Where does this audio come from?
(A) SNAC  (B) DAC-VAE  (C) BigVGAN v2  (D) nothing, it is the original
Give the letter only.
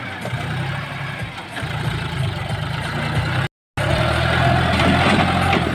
D